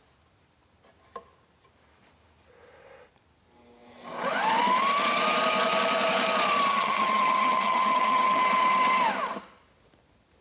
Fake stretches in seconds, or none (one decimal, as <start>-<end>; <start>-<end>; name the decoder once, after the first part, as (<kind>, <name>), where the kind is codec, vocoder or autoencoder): 6.7-8.4 (vocoder, HiFi-GAN)